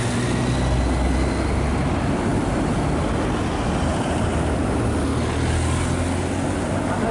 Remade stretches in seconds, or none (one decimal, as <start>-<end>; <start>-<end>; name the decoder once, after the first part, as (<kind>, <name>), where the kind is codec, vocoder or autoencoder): none